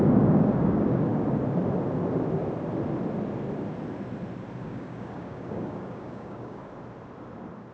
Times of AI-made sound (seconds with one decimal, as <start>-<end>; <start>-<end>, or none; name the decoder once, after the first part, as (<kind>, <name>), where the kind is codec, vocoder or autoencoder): 0.0-1.1 (codec, DAC); 4.6-6.6